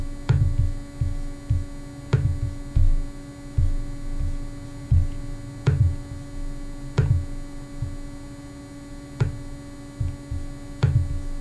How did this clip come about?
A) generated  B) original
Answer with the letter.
B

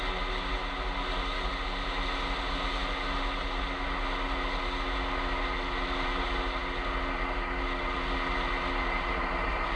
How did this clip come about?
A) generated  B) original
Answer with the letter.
B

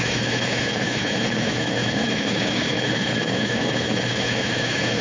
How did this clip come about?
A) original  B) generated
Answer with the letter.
B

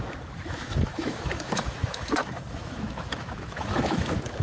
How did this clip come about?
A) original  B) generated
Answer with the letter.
B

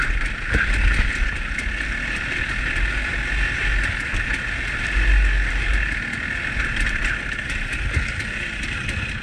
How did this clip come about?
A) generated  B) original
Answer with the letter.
B